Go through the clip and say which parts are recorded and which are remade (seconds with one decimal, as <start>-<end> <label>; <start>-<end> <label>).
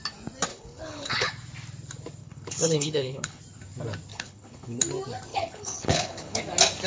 0.0-0.5 recorded; 0.5-1.3 remade; 1.3-2.2 recorded; 2.2-3.4 remade; 3.4-4.1 recorded; 4.1-4.8 remade; 4.8-5.3 recorded; 5.3-6.4 remade; 6.4-6.9 recorded